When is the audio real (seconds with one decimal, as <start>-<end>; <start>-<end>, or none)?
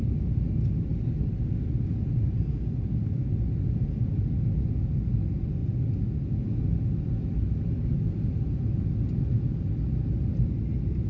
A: 0.0-11.1